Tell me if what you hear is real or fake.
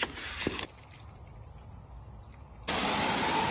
real